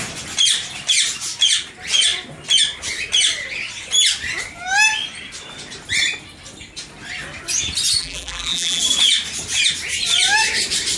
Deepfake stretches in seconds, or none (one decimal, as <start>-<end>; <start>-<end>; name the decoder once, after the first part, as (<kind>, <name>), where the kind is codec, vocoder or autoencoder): 8.0-8.8 (vocoder, BigVGAN v2)